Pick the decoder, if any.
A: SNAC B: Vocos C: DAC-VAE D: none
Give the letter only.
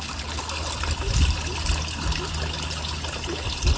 D